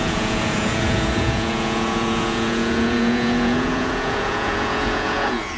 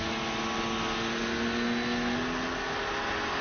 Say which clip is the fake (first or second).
first